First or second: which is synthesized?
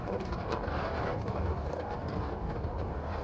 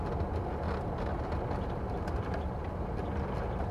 first